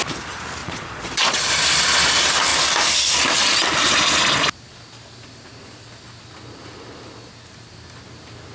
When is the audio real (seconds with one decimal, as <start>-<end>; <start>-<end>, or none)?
0.0-0.6; 1.5-8.5